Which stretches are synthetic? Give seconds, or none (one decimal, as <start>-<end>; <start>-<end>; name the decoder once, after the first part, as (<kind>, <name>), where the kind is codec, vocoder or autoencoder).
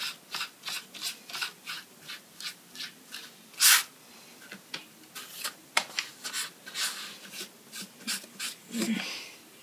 none